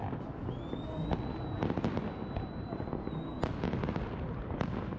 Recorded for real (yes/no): yes